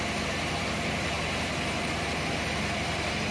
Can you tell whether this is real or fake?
real